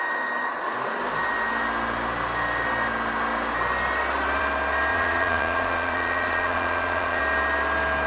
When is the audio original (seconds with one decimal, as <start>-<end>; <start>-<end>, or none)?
0.0-4.9; 7.2-8.1